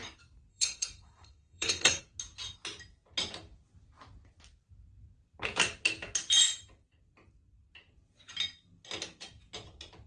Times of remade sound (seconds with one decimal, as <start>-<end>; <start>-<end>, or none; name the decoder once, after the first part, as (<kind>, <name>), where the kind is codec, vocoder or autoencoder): 0.5-2.0 (codec, SNAC)

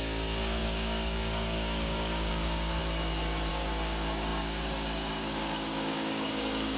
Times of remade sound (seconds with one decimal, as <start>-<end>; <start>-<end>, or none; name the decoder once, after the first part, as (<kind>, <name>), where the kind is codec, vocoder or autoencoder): 0.0-2.8 (codec, DAC); 3.5-6.8

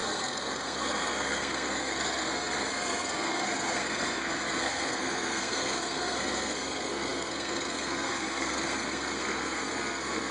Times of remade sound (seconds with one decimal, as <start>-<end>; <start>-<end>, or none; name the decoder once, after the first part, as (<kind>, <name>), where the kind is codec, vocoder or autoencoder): 0.0-10.3 (codec, SNAC)

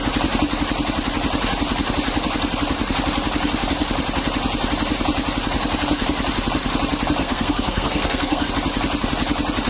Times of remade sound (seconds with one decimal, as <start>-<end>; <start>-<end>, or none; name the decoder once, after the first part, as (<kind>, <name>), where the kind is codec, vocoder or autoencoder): 7.2-8.5 (codec, SNAC)

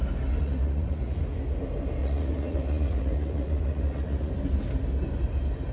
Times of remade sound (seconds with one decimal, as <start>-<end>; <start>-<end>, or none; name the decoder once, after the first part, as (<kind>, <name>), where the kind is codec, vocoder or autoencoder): 0.4-1.2 (vocoder, Vocos); 2.0-4.3

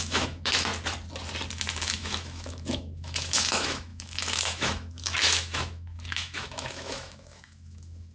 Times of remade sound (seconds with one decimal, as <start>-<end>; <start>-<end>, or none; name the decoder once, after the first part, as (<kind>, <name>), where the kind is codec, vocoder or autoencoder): 0.0-0.7 (autoencoder, DAC-VAE); 1.8-8.1